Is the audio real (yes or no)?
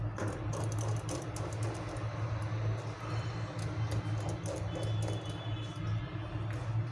yes